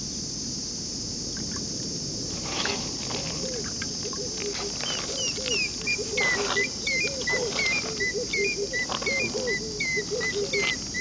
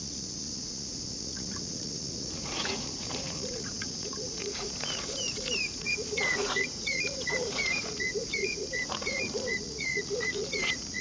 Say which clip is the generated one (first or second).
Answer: second